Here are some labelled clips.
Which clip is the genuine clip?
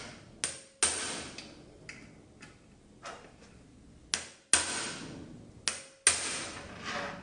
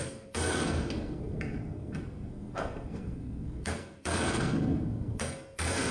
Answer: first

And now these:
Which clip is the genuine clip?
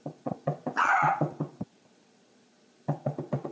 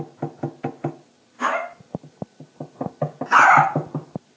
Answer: second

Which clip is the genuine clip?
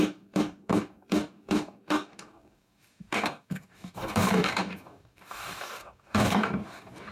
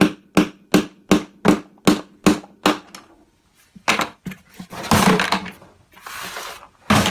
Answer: second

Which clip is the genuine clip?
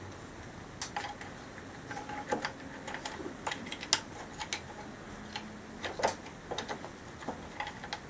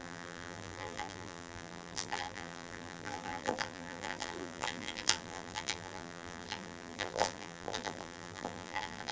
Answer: first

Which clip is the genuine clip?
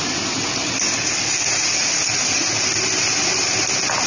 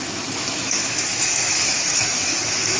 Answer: first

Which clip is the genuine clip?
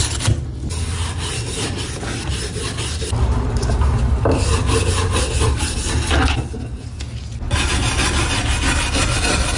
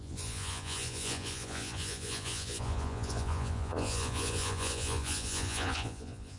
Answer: first